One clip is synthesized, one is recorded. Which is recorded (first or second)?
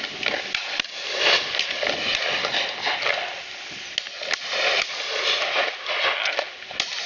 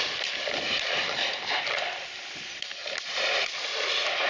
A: first